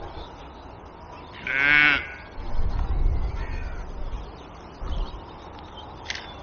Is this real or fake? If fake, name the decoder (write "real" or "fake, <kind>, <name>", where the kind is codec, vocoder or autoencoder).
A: real